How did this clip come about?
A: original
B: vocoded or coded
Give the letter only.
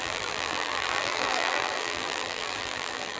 B